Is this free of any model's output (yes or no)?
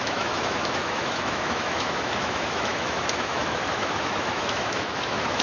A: no